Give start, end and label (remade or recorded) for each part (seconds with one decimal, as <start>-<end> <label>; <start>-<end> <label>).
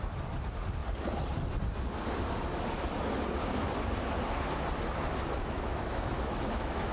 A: 0.0-5.4 recorded; 5.4-6.9 remade